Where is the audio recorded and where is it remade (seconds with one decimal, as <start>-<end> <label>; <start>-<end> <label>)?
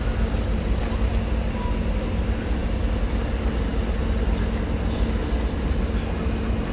0.0-6.7 recorded